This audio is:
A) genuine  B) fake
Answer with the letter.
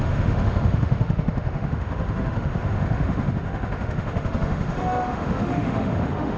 B